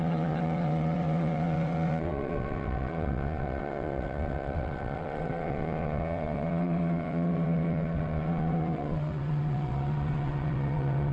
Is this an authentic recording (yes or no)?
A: no